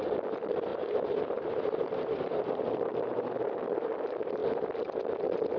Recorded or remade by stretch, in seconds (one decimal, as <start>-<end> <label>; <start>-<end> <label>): 0.0-0.7 recorded; 0.7-3.9 remade; 3.9-5.6 recorded